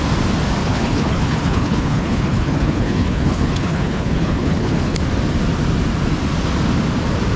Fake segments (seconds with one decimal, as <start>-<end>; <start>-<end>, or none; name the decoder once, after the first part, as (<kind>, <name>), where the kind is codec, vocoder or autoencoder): 0.6-5.0 (codec, HILCodec)